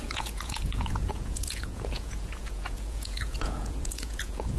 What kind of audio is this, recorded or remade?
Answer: remade